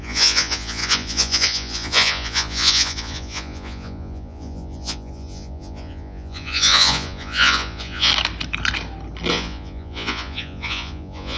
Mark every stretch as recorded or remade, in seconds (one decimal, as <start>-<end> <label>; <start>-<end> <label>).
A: 0.0-8.1 remade; 8.1-9.3 recorded; 9.3-11.4 remade